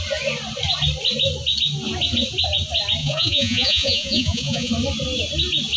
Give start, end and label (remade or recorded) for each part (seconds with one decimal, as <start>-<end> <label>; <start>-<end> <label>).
0.0-3.0 recorded; 3.0-4.7 remade; 4.7-5.8 recorded